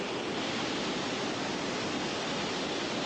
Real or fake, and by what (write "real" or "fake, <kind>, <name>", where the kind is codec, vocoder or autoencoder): real